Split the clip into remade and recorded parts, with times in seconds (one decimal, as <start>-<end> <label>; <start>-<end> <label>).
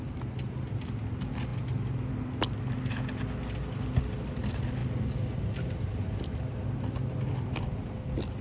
0.0-8.4 recorded